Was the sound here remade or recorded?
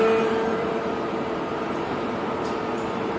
remade